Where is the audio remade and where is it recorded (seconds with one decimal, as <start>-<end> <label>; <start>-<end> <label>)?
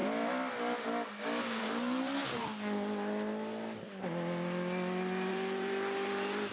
0.0-1.6 recorded; 1.6-2.2 remade; 2.2-5.3 recorded; 5.3-6.5 remade